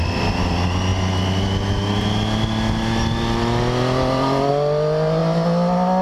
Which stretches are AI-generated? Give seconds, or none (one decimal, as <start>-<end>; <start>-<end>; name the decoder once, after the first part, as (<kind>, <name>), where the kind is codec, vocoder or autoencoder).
none